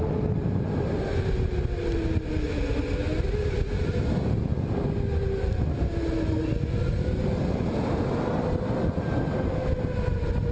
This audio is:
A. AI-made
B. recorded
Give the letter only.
B